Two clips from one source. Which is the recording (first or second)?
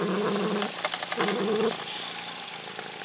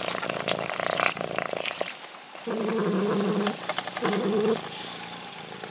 first